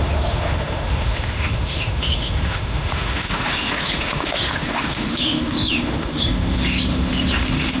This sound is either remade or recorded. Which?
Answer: remade